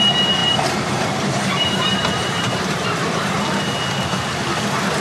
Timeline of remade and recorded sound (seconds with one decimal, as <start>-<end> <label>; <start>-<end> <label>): 0.0-0.4 recorded; 0.4-3.4 remade; 3.4-5.0 recorded